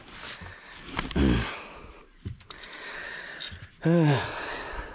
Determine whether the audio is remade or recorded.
recorded